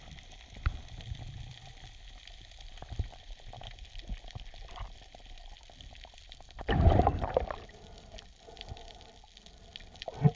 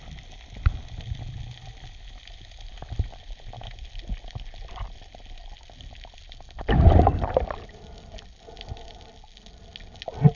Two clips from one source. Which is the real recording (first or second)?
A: second